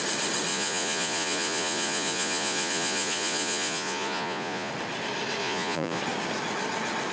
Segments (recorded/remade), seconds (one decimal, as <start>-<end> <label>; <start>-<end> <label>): 0.0-0.5 recorded; 0.5-4.7 remade; 4.7-5.4 recorded; 5.4-6.0 remade; 6.0-7.1 recorded